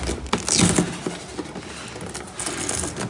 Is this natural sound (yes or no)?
yes